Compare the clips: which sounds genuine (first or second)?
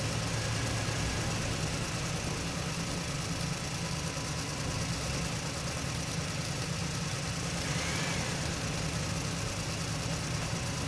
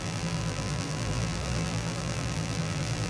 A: first